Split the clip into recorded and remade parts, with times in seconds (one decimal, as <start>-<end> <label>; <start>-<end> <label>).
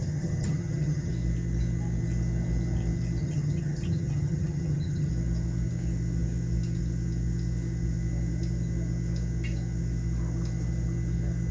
0.0-1.1 remade; 1.1-3.2 recorded; 3.2-5.1 remade; 5.1-11.5 recorded